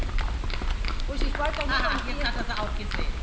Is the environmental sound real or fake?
real